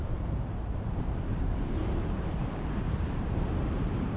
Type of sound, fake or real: fake